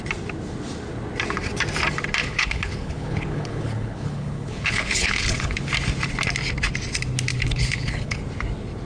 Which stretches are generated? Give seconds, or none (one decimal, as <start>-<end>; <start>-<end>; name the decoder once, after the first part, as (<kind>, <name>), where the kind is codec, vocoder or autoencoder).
2.2-5.7 (codec, HILCodec); 7.3-8.2